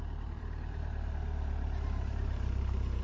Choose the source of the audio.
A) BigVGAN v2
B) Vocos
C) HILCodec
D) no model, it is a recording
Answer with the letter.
A